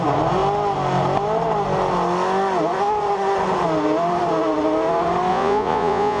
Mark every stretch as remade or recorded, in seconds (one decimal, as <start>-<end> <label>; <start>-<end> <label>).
0.0-5.3 recorded; 5.3-6.2 remade